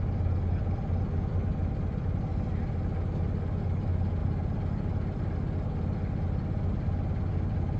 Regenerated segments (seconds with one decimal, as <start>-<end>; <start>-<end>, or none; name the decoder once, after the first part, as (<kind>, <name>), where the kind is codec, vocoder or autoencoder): 1.5-2.8 (vocoder, BigVGAN v2)